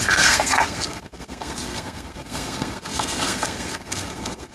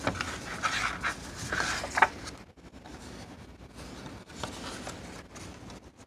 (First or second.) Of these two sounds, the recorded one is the second